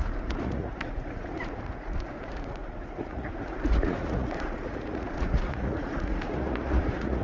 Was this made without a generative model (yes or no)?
no